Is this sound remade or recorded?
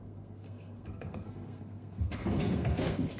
remade